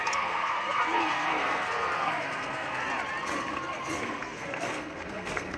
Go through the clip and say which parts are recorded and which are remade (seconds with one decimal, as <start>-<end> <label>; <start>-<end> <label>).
0.0-2.8 remade; 2.8-3.5 recorded; 3.5-5.6 remade